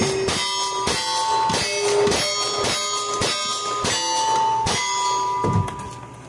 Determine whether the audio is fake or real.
real